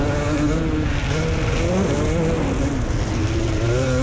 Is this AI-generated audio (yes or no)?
no